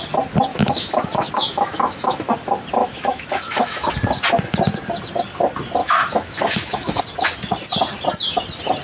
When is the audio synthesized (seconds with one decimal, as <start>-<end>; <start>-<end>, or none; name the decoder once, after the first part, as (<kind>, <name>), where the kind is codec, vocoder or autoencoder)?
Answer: 0.5-2.3 (autoencoder, DAC-VAE); 2.8-3.9; 5.8-7.0